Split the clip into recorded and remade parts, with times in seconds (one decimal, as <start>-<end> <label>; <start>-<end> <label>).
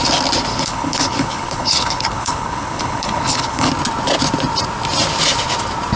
0.0-0.5 recorded; 0.5-3.7 remade; 3.7-6.0 recorded